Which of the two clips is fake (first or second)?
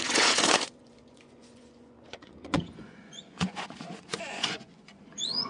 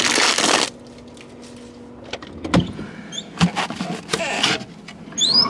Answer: first